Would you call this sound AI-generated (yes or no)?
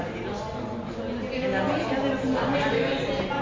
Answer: no